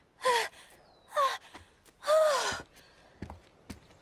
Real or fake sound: real